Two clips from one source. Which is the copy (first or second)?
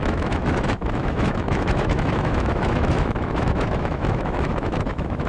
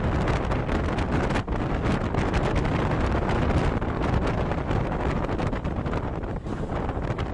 first